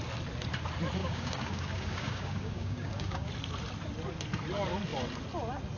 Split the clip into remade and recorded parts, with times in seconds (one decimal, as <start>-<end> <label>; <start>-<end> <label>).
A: 0.0-1.0 recorded; 1.0-3.3 remade; 3.3-5.8 recorded